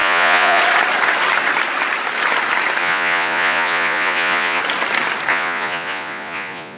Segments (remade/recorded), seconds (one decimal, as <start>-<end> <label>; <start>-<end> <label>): 0.0-0.6 remade; 0.6-2.8 recorded; 2.8-4.6 remade; 4.6-5.3 recorded; 5.3-6.8 remade